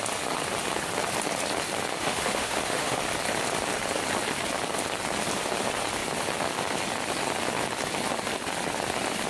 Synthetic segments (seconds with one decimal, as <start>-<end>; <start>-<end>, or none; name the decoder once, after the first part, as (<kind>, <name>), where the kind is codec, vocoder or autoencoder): 1.9-3.0 (autoencoder, DAC-VAE)